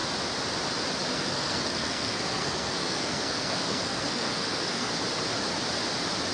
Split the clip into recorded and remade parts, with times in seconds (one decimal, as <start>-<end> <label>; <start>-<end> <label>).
0.0-1.1 recorded; 1.1-4.9 remade; 4.9-6.3 recorded